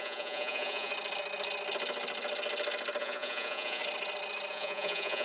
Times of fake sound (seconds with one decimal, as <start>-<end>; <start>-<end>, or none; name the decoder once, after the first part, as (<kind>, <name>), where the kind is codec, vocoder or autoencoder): 0.0-0.9 (vocoder, Vocos); 3.0-3.8; 4.5-5.2